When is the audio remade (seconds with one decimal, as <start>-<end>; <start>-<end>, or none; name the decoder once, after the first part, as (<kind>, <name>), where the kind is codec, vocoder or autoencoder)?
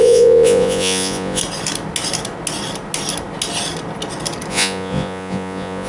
0.0-1.4 (vocoder, Vocos); 4.5-5.9